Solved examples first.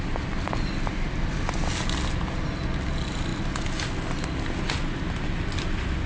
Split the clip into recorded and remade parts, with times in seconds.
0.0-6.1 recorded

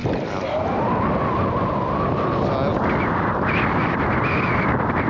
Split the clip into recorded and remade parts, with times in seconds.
0.0-5.1 recorded

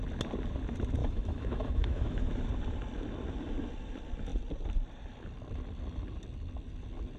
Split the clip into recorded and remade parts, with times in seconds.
0.0-1.0 recorded; 1.0-2.3 remade; 2.3-7.2 recorded

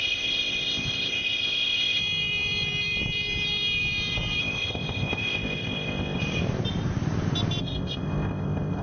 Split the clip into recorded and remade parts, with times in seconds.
0.0-2.0 remade; 2.0-4.4 recorded; 4.4-6.2 remade; 6.2-7.6 recorded; 7.6-8.8 remade

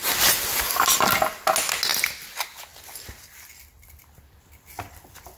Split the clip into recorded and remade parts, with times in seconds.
0.0-1.5 remade; 1.5-5.4 recorded